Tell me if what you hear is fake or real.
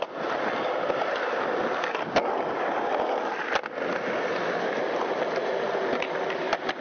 real